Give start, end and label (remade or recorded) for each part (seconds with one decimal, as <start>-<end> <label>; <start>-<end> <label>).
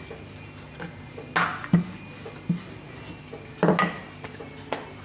0.0-5.0 recorded